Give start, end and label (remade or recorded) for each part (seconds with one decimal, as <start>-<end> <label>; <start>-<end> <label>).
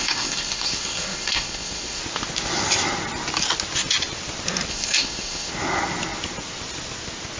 0.0-2.0 remade; 2.0-4.7 recorded; 4.7-5.5 remade; 5.5-7.4 recorded